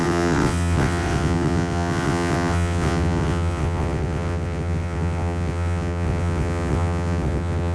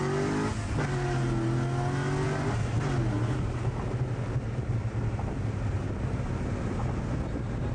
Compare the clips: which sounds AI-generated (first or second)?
first